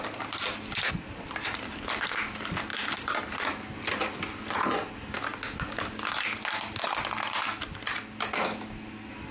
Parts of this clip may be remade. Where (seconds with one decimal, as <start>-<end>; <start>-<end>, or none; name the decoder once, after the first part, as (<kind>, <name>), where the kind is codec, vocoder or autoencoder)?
2.7-3.2 (vocoder, BigVGAN v2)